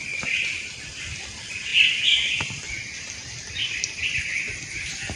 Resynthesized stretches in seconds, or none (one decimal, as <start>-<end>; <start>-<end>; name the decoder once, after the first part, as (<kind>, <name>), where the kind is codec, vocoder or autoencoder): none